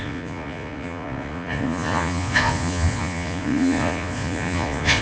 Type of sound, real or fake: fake